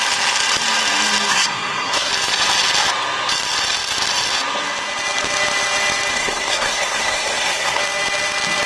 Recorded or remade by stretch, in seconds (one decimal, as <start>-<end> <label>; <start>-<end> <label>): 0.0-1.3 recorded; 1.3-2.1 remade; 2.1-6.1 recorded; 6.1-7.8 remade; 7.8-8.7 recorded